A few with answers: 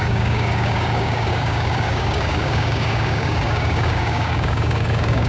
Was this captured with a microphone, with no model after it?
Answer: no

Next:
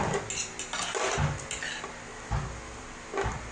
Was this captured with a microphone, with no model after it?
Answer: yes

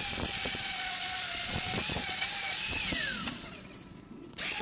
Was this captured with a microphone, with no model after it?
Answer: no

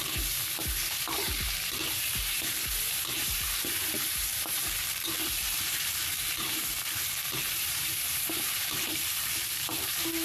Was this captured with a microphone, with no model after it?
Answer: no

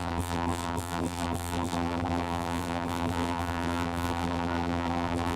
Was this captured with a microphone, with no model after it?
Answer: no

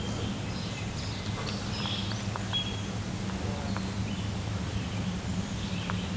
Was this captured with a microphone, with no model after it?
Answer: yes